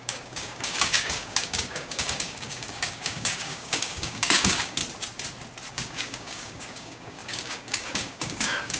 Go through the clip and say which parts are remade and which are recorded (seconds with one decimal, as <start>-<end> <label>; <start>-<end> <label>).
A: 0.0-4.8 remade; 4.8-5.7 recorded; 5.7-8.8 remade